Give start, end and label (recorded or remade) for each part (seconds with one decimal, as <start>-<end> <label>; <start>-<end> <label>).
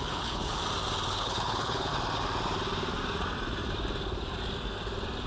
0.0-0.6 remade; 0.6-1.1 recorded; 1.1-1.9 remade; 1.9-5.3 recorded